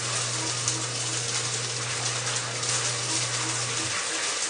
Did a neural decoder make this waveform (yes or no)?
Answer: no